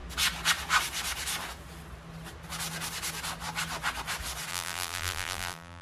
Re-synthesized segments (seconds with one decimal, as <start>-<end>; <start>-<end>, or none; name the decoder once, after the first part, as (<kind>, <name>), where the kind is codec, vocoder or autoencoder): 4.5-5.8 (vocoder, BigVGAN v2)